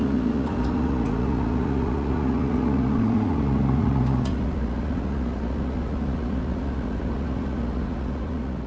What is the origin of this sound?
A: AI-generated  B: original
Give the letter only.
A